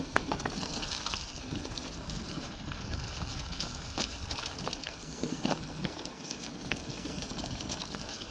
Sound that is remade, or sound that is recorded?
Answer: remade